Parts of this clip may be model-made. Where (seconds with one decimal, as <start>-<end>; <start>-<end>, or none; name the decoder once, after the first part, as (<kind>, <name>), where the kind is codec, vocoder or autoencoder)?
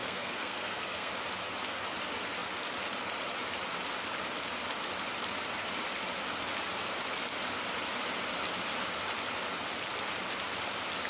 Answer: 0.0-1.1 (codec, SNAC)